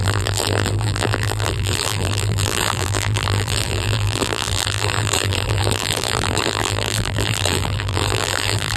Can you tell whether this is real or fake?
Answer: fake